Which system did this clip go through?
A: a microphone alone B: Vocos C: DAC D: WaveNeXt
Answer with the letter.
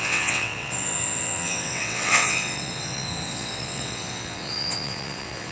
D